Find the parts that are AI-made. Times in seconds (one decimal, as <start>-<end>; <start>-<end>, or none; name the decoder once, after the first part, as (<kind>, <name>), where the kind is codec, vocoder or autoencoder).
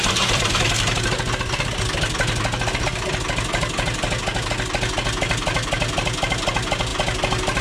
none